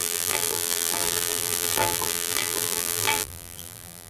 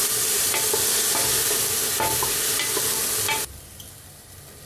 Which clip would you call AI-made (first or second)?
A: first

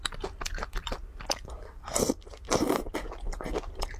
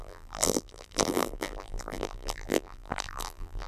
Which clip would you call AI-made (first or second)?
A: second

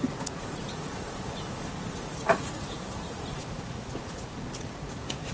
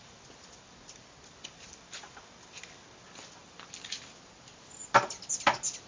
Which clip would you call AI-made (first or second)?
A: first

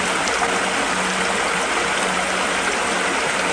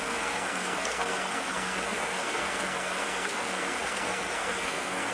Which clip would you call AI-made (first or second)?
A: second